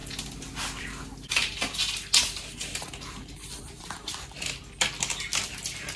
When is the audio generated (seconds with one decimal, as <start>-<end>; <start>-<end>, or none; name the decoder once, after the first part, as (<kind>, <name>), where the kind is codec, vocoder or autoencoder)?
none